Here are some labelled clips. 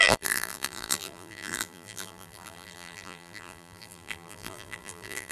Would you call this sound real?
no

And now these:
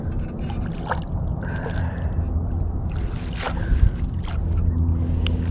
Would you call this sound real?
yes